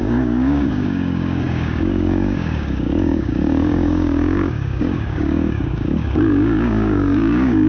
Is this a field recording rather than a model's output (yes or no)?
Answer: no